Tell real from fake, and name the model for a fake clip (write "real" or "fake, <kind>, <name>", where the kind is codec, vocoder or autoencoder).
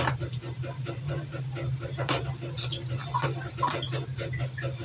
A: real